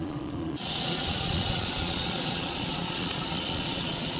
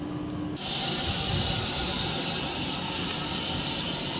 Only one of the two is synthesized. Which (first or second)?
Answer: first